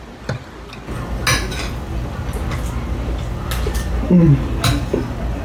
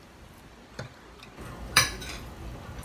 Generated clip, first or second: second